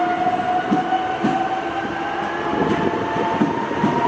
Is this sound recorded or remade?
recorded